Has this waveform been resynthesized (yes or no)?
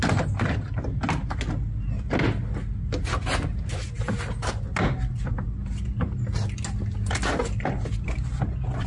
no